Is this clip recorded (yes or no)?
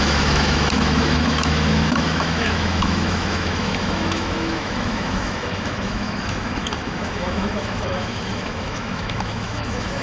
no